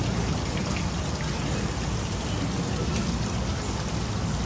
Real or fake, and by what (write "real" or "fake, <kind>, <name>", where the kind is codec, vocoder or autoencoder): real